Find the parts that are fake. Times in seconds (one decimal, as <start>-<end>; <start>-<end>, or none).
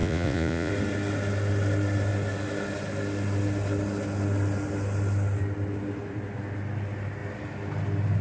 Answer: 0.0-0.7